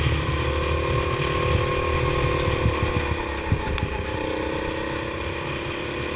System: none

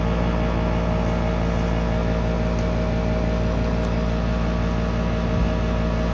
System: none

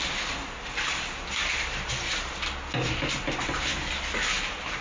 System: none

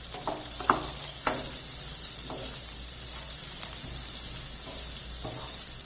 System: none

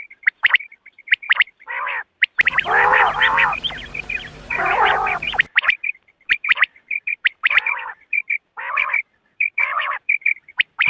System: vocoder, BigVGAN v2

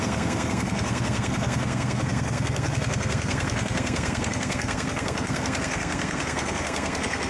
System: codec, SNAC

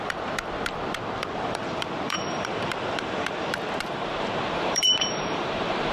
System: vocoder, BigVGAN v2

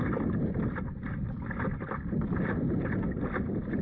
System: none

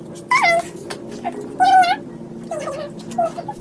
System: none